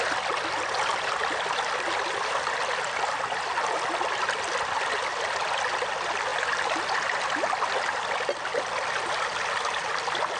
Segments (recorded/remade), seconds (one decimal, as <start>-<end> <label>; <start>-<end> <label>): 0.0-10.4 recorded